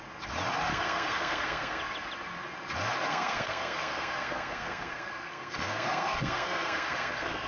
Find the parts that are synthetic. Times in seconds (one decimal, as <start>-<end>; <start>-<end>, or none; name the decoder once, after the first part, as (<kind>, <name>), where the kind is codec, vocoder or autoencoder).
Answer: 0.7-1.8 (codec, SNAC); 3.1-7.5